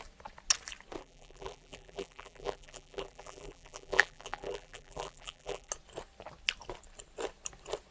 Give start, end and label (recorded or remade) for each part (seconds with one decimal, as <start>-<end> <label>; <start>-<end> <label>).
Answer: 0.0-1.0 recorded; 1.0-5.7 remade; 5.7-7.9 recorded